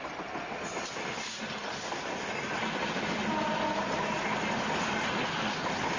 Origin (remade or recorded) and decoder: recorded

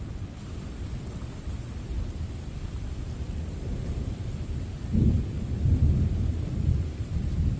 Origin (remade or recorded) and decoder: recorded